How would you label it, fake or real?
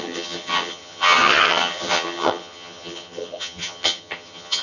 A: fake